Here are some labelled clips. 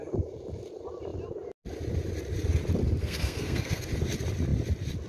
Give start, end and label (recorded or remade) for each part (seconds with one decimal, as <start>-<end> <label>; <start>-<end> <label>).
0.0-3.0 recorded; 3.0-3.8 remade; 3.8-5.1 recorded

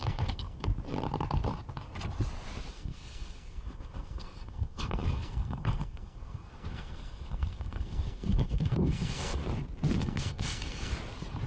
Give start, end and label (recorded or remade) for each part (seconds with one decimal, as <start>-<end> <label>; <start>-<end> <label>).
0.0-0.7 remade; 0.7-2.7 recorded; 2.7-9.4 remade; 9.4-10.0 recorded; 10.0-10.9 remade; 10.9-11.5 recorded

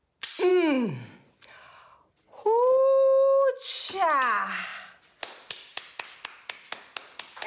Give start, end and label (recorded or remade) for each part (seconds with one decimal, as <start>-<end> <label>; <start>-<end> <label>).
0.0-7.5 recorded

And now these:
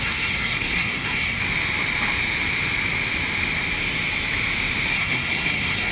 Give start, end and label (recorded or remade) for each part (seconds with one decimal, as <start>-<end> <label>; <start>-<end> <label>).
0.0-1.4 remade; 1.4-4.9 recorded; 4.9-5.9 remade

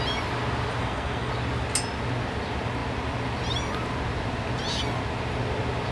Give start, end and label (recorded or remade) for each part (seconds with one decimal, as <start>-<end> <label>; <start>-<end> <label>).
0.0-0.8 recorded; 0.8-1.3 remade; 1.3-5.9 recorded

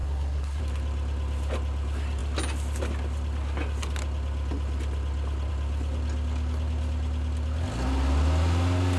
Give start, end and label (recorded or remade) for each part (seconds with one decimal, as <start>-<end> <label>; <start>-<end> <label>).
0.0-0.6 remade; 0.6-9.0 recorded

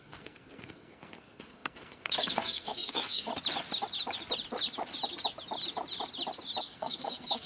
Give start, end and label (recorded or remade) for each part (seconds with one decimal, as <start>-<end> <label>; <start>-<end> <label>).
0.0-3.3 remade; 3.3-6.6 recorded; 6.6-7.5 remade

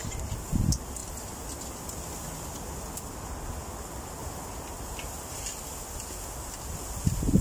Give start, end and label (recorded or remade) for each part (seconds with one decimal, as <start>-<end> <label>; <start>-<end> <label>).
0.0-7.4 recorded